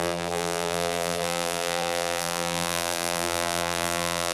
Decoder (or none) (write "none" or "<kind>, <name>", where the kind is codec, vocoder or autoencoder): vocoder, BigVGAN v2